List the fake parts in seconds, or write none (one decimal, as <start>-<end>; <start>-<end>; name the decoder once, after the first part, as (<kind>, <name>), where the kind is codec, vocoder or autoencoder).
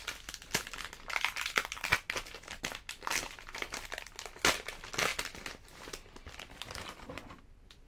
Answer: none